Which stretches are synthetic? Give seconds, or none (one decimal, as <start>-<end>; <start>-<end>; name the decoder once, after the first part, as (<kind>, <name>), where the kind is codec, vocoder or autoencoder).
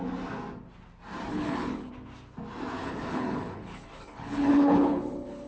1.3-1.9 (codec, HILCodec); 2.8-5.5